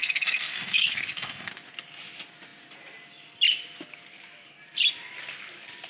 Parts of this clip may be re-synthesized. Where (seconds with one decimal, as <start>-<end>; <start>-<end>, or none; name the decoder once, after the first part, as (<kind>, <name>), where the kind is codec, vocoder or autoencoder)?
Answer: 0.0-1.5 (codec, SNAC)